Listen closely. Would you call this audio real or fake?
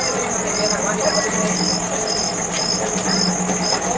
real